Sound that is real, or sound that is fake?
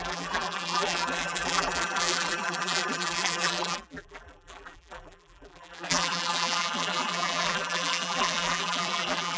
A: fake